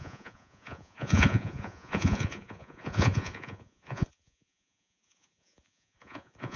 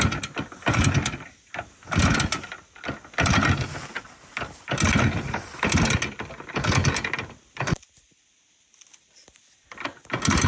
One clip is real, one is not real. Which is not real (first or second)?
first